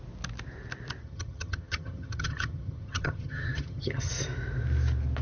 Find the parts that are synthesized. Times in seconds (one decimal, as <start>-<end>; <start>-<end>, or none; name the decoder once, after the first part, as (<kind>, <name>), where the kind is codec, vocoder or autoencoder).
1.0-4.1 (vocoder, HiFi-GAN)